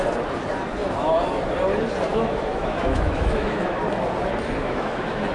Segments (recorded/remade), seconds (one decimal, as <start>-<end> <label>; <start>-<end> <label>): 0.0-2.1 recorded; 2.1-3.8 remade; 3.8-4.6 recorded; 4.6-5.3 remade